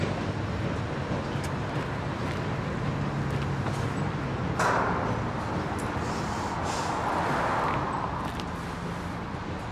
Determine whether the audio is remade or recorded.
recorded